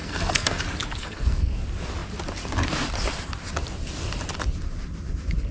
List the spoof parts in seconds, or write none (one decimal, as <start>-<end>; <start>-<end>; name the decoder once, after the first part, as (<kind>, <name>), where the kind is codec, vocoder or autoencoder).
0.0-0.6 (codec, SNAC); 1.0-1.5